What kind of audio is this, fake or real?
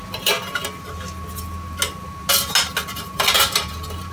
real